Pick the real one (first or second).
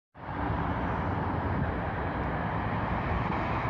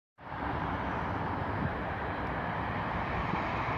first